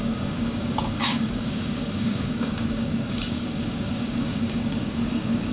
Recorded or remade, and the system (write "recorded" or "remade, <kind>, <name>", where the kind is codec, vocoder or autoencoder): remade, codec, DAC